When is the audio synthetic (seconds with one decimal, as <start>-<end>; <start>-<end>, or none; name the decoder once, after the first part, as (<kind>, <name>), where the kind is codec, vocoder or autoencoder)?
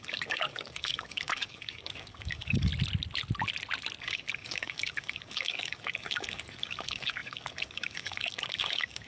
0.0-2.7 (codec, DAC); 4.0-9.1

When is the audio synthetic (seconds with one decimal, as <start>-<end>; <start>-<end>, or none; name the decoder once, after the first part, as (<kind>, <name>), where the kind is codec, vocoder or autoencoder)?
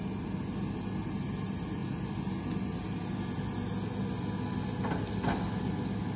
none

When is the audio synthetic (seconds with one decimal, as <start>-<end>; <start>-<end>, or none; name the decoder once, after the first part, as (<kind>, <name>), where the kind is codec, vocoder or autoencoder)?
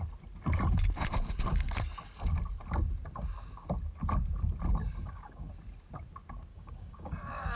4.8-5.5 (codec, DAC); 6.5-7.6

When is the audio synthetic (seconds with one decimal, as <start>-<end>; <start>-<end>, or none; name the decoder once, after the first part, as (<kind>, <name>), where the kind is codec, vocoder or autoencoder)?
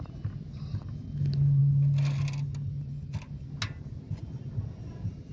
none